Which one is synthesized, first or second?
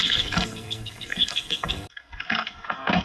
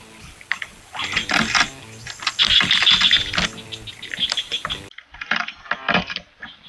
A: first